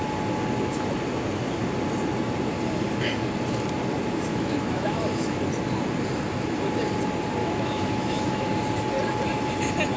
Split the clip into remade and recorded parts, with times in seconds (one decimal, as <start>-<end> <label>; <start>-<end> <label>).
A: 0.0-4.3 recorded; 4.3-5.4 remade; 5.4-7.4 recorded; 7.4-8.5 remade; 8.5-10.0 recorded